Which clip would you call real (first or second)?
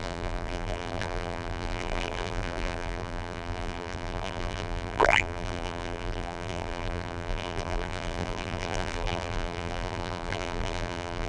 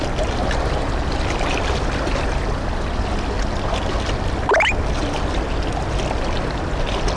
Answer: second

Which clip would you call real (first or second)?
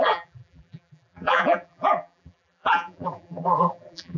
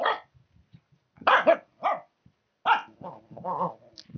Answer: second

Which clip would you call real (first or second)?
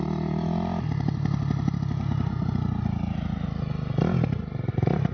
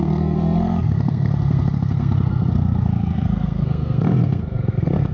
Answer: first